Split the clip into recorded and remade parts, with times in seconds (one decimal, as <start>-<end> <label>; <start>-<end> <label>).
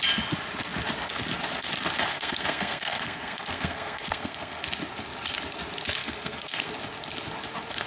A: 0.0-2.1 recorded; 2.1-4.6 remade; 4.6-6.0 recorded; 6.0-6.7 remade; 6.7-7.9 recorded